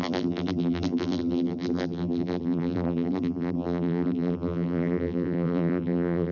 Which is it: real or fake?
fake